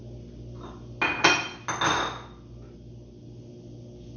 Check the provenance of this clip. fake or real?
real